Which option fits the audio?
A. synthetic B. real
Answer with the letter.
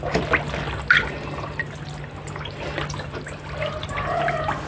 B